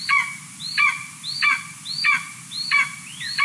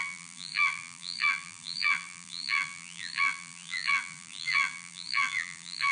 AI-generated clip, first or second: second